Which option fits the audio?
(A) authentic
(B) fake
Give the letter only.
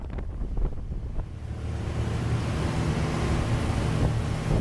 A